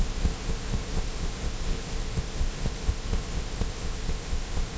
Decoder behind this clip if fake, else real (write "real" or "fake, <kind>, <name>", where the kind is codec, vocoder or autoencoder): fake, codec, ZipCodec